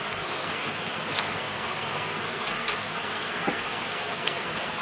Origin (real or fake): fake